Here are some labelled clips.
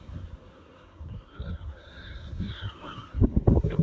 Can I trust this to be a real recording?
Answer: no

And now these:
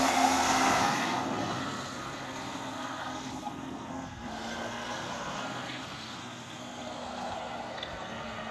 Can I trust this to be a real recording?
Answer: no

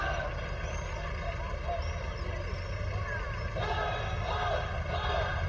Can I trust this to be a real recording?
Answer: yes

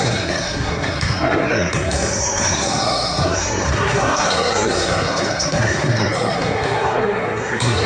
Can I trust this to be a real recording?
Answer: no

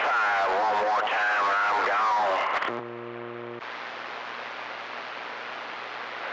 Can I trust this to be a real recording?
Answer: yes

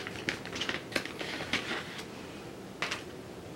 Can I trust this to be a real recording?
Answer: yes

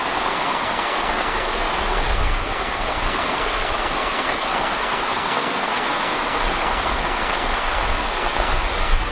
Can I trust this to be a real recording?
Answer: no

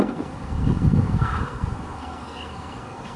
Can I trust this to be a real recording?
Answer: no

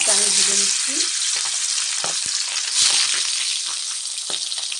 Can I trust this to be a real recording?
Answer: yes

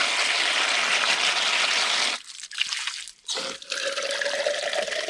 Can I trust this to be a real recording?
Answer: yes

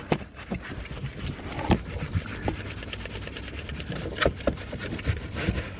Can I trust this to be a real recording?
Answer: yes